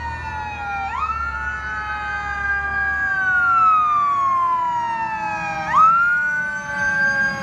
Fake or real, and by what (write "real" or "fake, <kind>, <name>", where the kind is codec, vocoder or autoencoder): real